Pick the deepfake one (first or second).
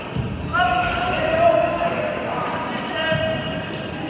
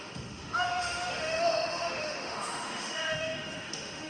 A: second